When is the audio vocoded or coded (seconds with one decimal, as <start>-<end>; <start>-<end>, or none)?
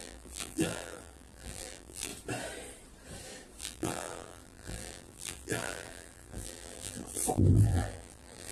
0.0-2.1; 3.6-8.5